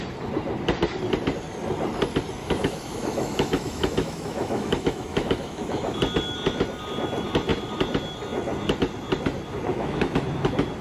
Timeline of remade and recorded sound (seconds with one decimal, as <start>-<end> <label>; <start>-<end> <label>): 0.0-2.4 recorded; 2.4-6.0 remade; 6.0-9.7 recorded; 9.7-10.2 remade; 10.2-10.8 recorded